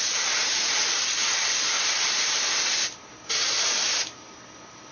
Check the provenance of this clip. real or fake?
fake